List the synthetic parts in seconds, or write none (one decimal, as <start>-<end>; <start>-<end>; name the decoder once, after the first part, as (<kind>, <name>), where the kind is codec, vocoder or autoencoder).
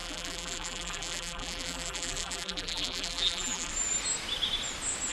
0.0-3.7 (vocoder, BigVGAN v2)